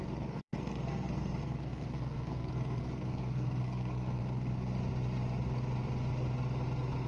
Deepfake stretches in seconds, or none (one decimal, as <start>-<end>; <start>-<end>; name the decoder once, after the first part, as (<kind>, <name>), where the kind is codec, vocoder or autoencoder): 0.0-4.2 (codec, SNAC)